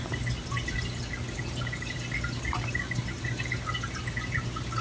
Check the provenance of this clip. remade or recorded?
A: recorded